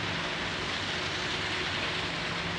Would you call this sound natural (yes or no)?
yes